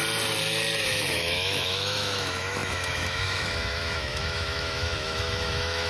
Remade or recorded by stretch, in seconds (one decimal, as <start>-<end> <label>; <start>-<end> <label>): 0.0-0.8 recorded; 0.8-5.9 remade